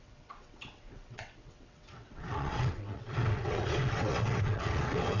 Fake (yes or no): yes